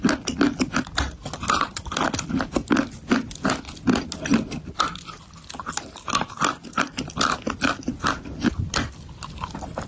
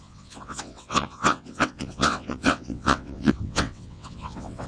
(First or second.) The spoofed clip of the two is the second